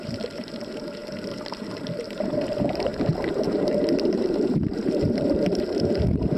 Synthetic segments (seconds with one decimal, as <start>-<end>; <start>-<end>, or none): 0.0-6.4